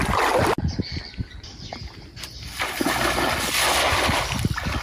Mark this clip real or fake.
real